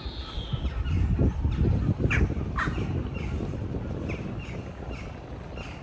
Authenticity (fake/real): real